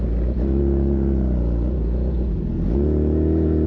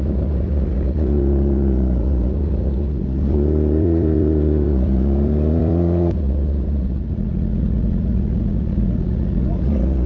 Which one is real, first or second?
first